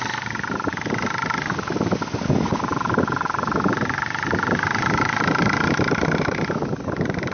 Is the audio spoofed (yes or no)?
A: no